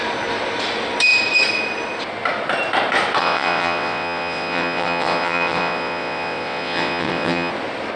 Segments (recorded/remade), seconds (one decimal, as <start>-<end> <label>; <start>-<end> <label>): 0.0-3.2 recorded; 3.2-7.5 remade; 7.5-8.0 recorded